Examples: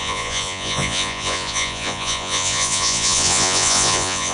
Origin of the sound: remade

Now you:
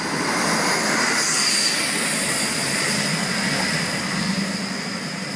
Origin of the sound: recorded